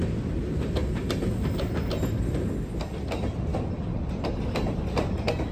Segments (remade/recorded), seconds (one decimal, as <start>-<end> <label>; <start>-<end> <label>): 0.0-5.5 recorded